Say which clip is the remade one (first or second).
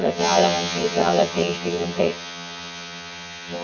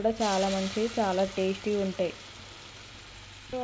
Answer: first